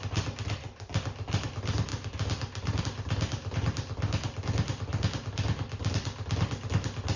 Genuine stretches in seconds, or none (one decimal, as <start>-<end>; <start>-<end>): 0.0-7.2